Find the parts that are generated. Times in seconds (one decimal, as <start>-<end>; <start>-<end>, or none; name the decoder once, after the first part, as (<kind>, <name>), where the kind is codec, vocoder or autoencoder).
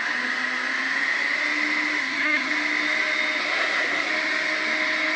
2.0-2.5 (codec, SNAC); 3.4-4.1